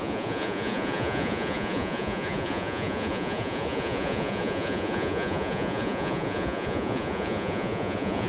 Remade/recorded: remade